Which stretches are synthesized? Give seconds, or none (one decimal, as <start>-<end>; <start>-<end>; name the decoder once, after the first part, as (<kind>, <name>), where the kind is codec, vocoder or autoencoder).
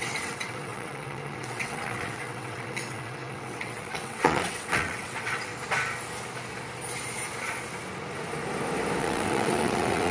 0.0-5.5 (vocoder, WaveNeXt); 9.0-10.1